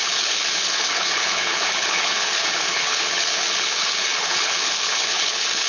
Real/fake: fake